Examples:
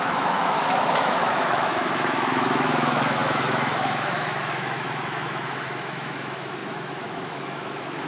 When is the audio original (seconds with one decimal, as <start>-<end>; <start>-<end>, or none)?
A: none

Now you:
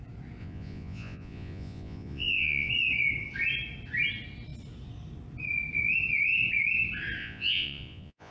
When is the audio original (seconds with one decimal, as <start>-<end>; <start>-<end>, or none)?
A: 0.0-0.4; 2.7-7.2

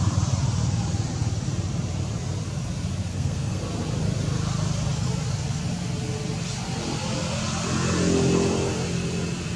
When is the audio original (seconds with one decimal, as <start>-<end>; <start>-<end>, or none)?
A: 0.0-3.1; 3.6-9.6